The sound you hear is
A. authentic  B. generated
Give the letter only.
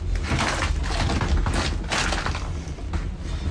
A